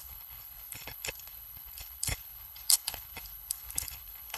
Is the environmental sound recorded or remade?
remade